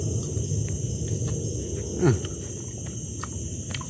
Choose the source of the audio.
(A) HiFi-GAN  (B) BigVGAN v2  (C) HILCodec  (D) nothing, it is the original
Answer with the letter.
D